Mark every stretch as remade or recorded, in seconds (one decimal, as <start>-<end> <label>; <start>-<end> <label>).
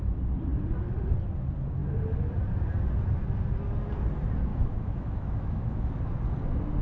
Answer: 0.0-4.5 recorded; 4.5-5.9 remade; 5.9-6.8 recorded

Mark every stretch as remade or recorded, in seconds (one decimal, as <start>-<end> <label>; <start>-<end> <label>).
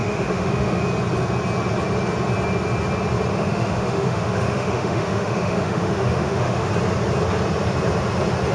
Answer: 0.0-0.8 remade; 0.8-3.3 recorded; 3.3-6.7 remade; 6.7-8.5 recorded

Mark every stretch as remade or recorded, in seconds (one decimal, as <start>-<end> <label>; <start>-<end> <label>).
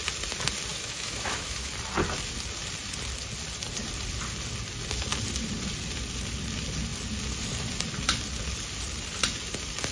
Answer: 0.0-0.7 recorded; 0.7-1.7 remade; 1.7-9.9 recorded